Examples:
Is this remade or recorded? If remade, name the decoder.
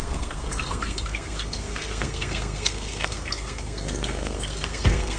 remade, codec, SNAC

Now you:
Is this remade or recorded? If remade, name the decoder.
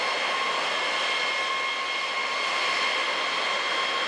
recorded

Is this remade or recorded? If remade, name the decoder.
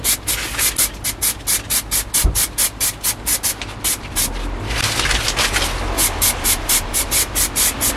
recorded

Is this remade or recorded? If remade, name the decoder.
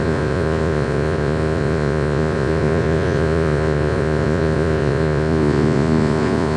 remade, vocoder, Vocos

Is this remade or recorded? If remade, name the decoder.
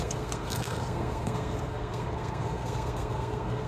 remade, codec, SNAC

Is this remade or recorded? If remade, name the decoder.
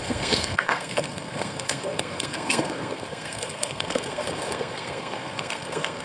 remade, codec, SNAC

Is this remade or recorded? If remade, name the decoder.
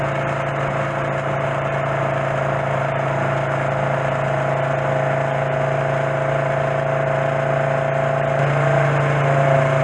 recorded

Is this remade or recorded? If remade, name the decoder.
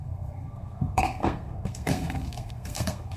remade, codec, SNAC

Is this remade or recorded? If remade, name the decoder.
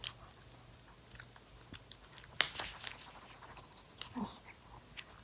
recorded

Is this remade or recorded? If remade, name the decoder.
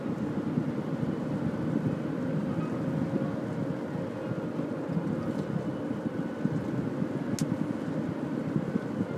recorded